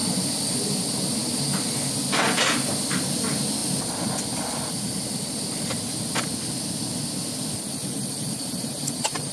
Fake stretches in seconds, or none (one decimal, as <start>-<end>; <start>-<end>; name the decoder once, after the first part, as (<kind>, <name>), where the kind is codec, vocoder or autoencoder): none